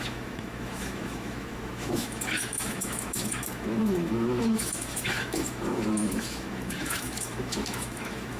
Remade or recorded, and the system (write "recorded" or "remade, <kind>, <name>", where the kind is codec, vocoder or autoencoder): remade, autoencoder, DAC-VAE